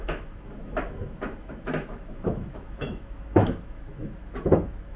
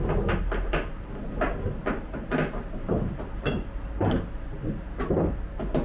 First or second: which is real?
second